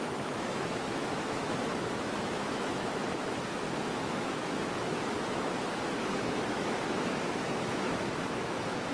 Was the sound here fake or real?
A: fake